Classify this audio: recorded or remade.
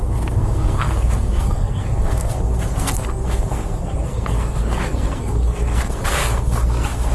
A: remade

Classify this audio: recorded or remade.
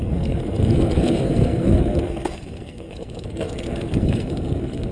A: remade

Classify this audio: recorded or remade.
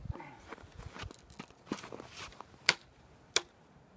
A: recorded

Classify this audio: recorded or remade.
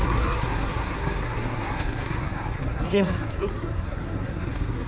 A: remade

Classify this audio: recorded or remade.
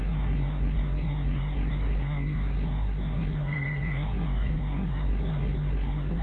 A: remade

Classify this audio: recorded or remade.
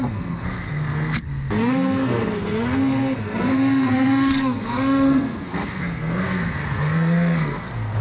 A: remade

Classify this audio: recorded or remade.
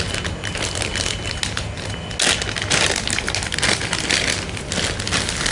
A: recorded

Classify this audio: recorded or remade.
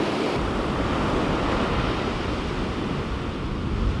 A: recorded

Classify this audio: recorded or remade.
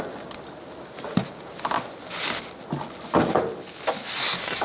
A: recorded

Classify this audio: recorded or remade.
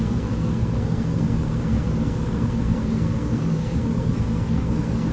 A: remade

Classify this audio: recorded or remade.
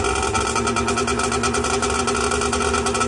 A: recorded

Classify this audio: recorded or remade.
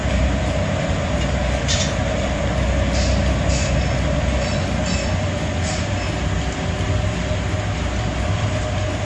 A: recorded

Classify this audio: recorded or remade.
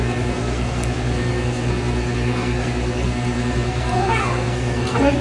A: remade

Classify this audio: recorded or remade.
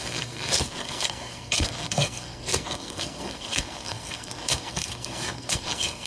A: remade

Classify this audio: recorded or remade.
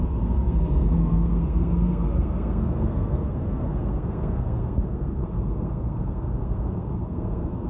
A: remade